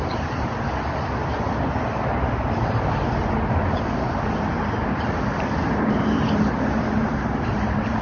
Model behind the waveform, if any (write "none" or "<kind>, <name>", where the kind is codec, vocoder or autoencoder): none